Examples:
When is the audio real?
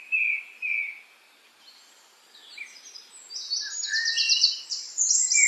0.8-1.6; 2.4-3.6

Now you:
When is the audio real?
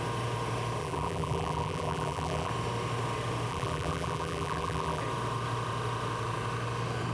0.0-0.8; 2.5-3.5; 5.0-7.1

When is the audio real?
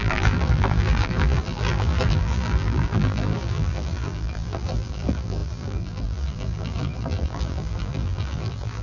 none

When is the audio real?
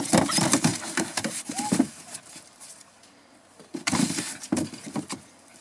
0.0-0.7; 1.4-3.7; 4.2-5.6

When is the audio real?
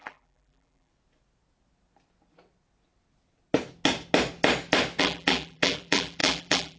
0.9-5.0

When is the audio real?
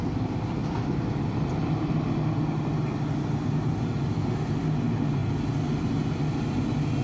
0.0-7.0